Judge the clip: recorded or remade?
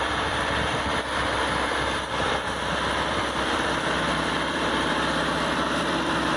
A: remade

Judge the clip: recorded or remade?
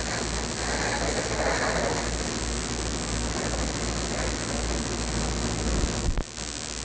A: recorded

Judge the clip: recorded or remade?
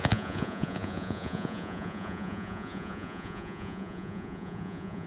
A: remade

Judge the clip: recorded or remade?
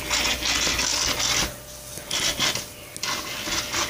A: recorded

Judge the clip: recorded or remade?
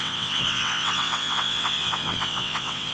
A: remade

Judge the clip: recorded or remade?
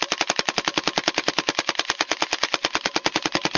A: recorded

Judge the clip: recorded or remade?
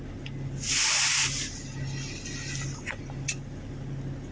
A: recorded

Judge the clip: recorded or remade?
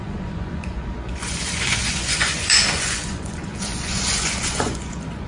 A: remade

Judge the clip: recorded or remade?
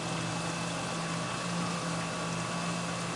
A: recorded